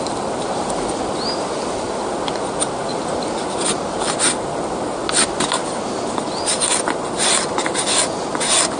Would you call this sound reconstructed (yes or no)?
no